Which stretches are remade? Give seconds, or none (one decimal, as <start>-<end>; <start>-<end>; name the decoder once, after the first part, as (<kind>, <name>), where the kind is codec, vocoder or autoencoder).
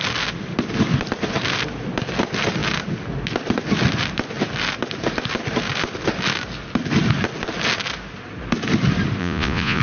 9.2-9.8 (vocoder, Vocos)